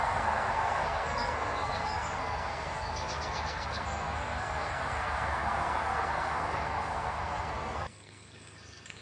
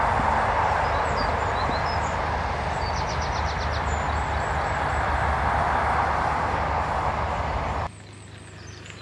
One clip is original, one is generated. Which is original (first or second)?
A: second